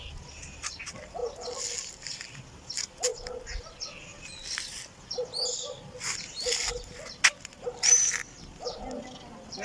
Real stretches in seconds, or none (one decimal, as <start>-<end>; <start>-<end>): 0.0-9.6